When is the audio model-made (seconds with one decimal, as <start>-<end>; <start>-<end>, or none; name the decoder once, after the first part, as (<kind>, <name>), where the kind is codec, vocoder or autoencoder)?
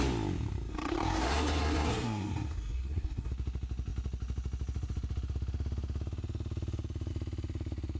0.7-3.3 (codec, SNAC)